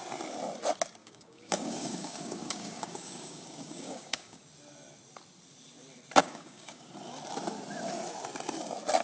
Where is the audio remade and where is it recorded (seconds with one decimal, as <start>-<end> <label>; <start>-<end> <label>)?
0.0-1.0 recorded; 1.0-4.4 remade; 4.4-6.2 recorded; 6.2-6.9 remade; 6.9-9.0 recorded